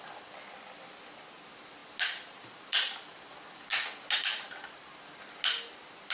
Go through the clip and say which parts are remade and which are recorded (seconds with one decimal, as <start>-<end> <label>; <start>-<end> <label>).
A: 0.0-6.1 recorded